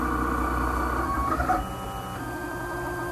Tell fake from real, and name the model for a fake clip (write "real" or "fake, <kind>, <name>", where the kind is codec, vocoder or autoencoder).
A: real